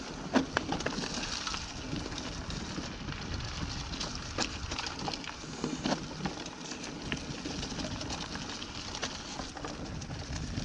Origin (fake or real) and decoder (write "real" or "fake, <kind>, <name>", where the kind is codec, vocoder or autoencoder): real